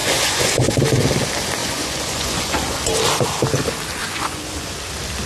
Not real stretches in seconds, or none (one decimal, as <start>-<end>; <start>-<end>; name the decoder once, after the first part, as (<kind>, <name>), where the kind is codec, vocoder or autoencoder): 0.0-0.7 (vocoder, Vocos); 1.6-2.8; 4.0-4.7